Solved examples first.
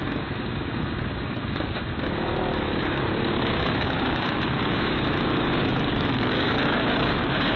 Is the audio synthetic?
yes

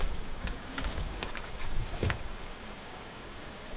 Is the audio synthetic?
yes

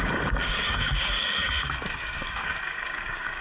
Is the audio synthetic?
yes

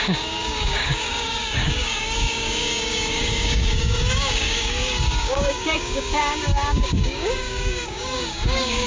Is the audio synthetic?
yes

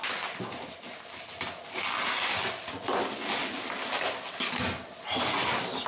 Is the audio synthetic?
no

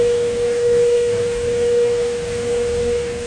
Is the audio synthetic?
yes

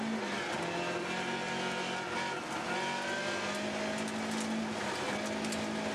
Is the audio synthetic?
no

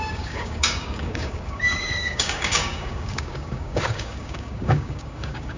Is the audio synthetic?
yes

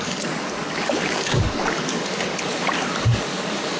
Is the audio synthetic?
yes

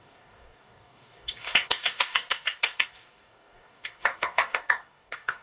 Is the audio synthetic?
yes